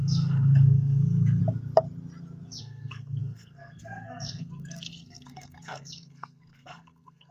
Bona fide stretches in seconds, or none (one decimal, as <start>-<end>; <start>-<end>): 1.4-2.6